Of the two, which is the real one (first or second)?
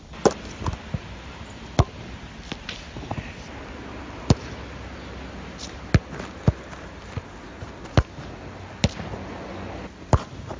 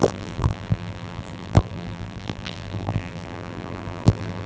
first